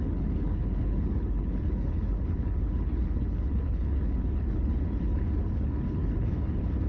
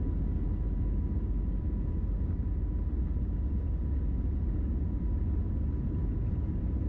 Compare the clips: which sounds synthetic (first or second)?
first